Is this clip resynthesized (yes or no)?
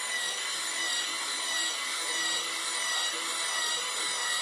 no